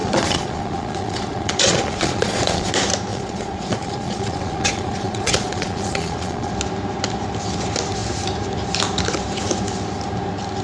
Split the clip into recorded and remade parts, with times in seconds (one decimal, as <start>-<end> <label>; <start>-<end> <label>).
0.0-2.7 remade; 2.7-3.1 recorded; 3.1-6.5 remade; 6.5-10.6 recorded